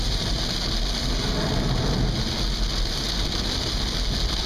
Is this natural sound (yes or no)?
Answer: yes